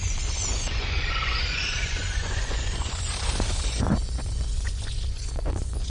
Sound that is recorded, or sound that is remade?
remade